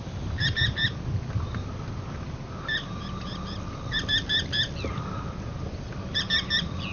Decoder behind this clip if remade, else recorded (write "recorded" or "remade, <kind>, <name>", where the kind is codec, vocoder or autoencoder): recorded